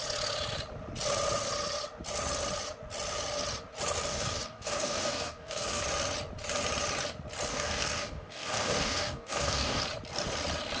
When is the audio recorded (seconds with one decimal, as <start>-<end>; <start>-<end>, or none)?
0.0-4.1; 5.8-7.5; 9.8-10.8